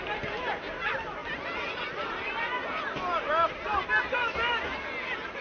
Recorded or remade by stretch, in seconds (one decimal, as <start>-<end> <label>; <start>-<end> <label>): 0.0-5.4 recorded